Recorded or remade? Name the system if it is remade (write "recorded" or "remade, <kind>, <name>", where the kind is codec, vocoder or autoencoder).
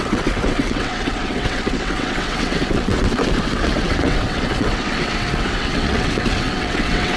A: remade, vocoder, WaveNeXt